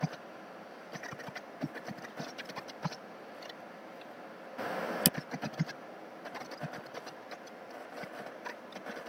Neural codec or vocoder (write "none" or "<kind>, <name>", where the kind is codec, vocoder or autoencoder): none